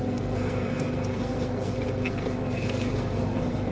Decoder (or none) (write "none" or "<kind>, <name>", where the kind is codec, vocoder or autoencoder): codec, SNAC